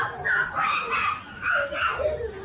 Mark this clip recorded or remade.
recorded